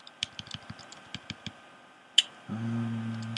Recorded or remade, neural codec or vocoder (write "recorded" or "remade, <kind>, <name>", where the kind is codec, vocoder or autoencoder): recorded